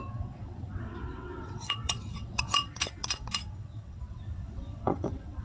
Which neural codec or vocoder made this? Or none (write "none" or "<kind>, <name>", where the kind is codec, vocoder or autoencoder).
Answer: vocoder, WaveNeXt